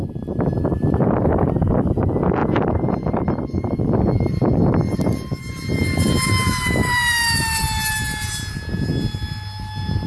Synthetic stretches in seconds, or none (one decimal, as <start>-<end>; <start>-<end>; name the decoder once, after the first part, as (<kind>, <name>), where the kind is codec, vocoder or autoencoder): 2.4-7.4 (vocoder, BigVGAN v2)

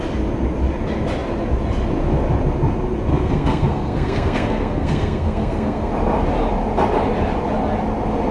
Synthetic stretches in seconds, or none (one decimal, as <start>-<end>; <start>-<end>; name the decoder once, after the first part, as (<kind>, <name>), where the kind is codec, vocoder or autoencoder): 3.1-5.9 (codec, SNAC)

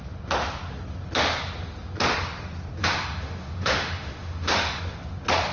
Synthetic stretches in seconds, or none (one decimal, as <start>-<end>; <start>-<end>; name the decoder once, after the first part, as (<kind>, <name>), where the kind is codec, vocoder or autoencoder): 2.8-4.8 (autoencoder, DAC-VAE)

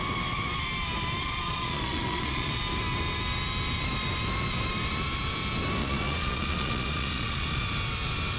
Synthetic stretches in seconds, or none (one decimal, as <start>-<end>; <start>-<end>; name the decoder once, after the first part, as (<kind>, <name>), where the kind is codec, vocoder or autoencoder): 1.2-2.6 (vocoder, Vocos); 5.8-7.6

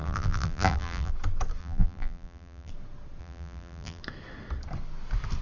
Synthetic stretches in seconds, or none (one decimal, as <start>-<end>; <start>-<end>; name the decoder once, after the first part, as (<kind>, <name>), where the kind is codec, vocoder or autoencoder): 0.0-1.1 (vocoder, BigVGAN v2); 1.6-2.7; 3.2-4.0

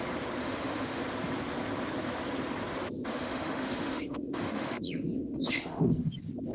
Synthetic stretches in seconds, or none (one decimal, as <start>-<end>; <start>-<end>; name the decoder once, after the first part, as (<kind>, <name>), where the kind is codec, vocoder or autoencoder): 0.4-1.0 (autoencoder, DAC-VAE); 3.1-6.1